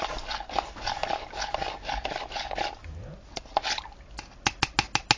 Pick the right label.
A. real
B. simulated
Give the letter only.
A